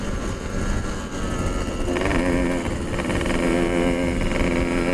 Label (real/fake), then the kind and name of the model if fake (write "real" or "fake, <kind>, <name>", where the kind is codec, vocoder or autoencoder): real